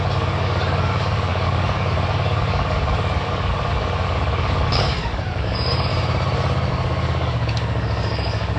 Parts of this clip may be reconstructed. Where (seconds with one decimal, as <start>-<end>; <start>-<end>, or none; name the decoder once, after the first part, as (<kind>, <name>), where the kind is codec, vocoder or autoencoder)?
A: 0.0-5.9 (codec, DAC); 6.7-8.6